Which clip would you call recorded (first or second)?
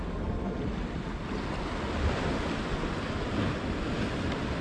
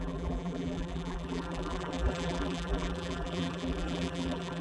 first